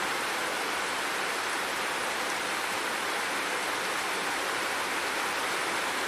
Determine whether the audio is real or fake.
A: real